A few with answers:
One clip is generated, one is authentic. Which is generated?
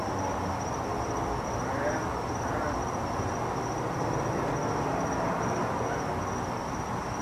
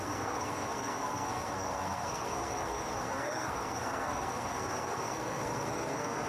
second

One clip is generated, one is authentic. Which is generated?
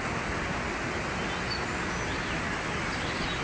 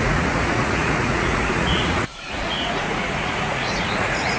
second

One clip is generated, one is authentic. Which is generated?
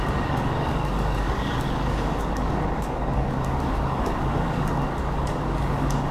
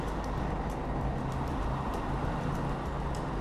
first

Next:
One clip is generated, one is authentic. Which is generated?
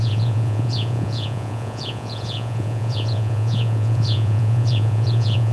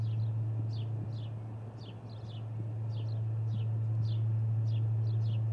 first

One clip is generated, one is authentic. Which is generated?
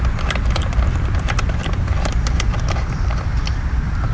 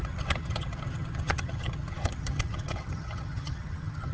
second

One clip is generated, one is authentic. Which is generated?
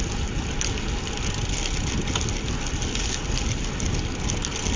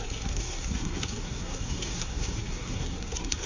second